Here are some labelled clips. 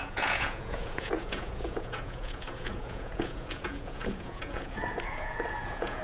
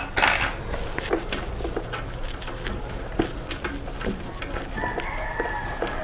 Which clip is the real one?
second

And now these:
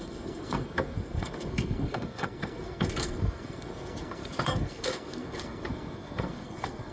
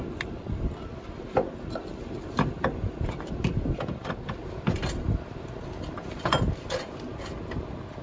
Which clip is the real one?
second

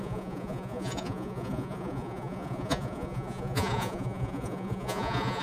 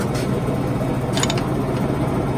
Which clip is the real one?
second